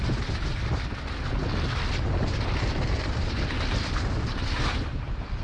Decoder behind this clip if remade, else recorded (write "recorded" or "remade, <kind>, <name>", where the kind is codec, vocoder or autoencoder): recorded